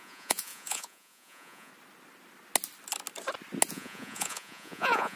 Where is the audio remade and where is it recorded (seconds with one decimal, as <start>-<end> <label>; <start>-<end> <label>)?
0.0-1.7 remade; 1.7-3.7 recorded; 3.7-5.2 remade